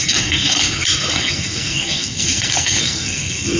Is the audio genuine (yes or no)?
no